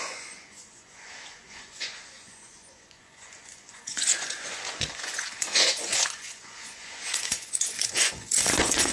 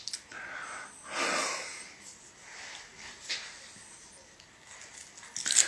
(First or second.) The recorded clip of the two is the second